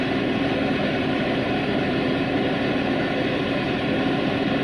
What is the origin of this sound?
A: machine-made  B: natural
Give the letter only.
A